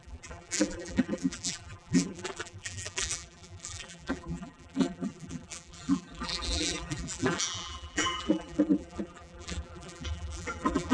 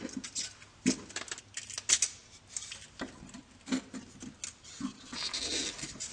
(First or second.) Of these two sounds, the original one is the second